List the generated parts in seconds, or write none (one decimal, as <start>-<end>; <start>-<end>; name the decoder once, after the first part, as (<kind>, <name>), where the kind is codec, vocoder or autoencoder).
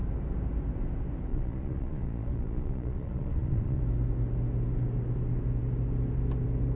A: 1.3-3.8 (vocoder, Vocos)